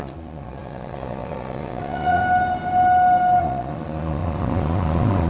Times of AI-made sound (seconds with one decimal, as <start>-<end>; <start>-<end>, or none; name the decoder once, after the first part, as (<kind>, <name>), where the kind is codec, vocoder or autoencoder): 0.0-2.2 (vocoder, Vocos); 3.4-5.3